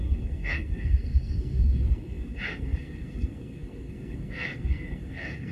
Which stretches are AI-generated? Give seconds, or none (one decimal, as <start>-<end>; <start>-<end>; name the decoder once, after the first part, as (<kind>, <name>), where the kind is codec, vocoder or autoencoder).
0.0-5.5 (codec, SNAC)